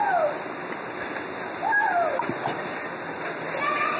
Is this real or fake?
real